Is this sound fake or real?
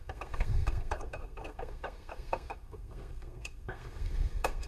fake